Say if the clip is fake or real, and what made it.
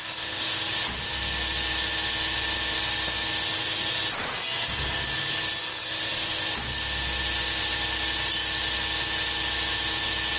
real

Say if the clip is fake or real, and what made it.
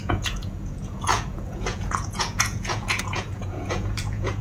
fake, vocoder, Vocos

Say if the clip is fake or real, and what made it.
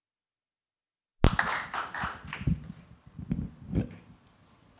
real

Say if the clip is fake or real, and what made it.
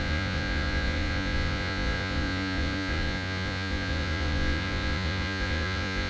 fake, vocoder, Vocos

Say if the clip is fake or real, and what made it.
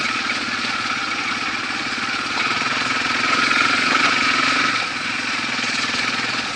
fake, vocoder, Vocos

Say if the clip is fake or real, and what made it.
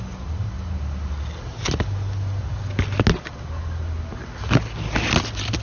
real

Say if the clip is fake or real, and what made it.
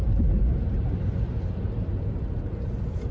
real